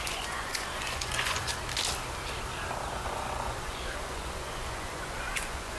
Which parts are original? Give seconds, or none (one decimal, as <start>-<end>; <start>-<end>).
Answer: 1.5-2.9